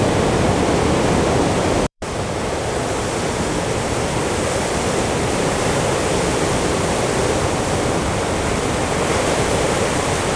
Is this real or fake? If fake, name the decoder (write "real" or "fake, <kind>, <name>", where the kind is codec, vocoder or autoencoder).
fake, vocoder, BigVGAN v2